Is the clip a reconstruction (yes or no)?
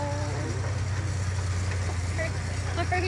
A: no